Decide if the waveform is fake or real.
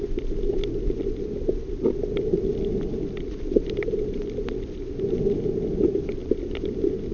real